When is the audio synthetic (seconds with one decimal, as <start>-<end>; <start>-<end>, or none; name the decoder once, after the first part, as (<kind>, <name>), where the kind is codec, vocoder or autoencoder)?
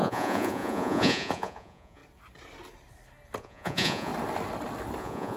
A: 0.0-2.0 (vocoder, Vocos); 3.4-4.1; 5.0-5.4